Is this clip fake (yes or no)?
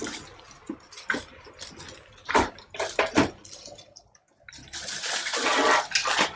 no